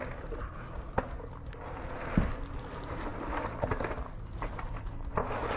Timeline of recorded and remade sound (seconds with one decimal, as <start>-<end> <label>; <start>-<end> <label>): 0.0-5.6 recorded